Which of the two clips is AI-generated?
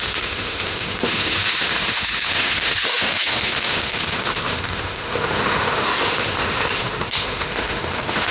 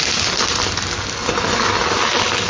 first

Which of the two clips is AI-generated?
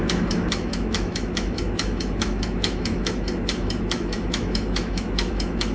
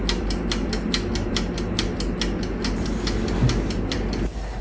first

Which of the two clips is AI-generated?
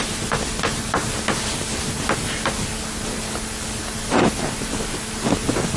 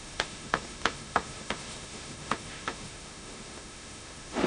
second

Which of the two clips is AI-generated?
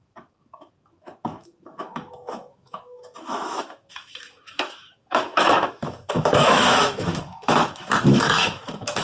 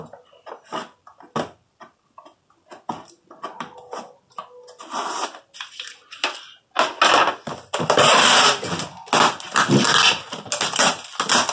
first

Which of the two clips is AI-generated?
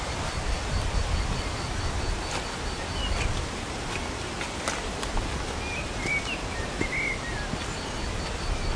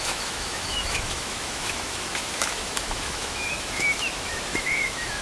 second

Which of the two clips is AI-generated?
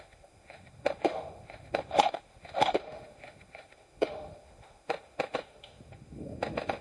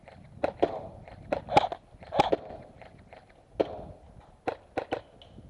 first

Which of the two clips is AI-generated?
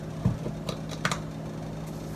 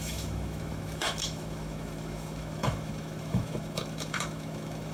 second